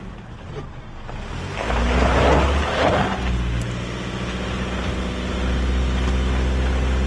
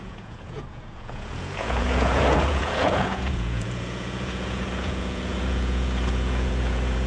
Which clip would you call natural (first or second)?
first